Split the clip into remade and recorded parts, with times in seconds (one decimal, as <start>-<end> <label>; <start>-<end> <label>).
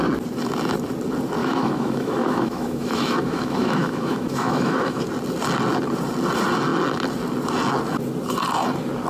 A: 0.0-1.4 recorded; 1.4-5.0 remade; 5.0-9.1 recorded